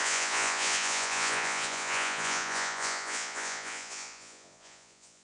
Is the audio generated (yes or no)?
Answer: yes